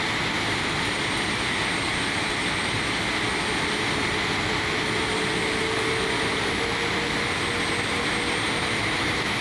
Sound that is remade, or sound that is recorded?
recorded